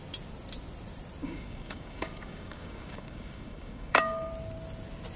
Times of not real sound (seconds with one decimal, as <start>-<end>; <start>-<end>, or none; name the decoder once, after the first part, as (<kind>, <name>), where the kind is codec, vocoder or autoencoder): 1.2-4.3 (codec, DAC)